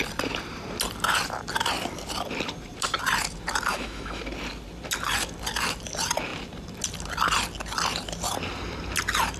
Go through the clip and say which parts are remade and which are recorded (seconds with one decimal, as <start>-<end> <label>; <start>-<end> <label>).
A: 0.0-3.7 recorded; 3.7-4.2 remade; 4.2-9.4 recorded